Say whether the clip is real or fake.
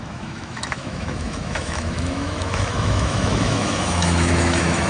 fake